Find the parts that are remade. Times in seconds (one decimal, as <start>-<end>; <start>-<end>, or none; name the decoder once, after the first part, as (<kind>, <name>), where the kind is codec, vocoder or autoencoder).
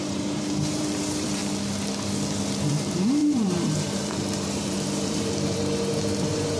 0.0-1.4 (vocoder, BigVGAN v2); 2.7-6.6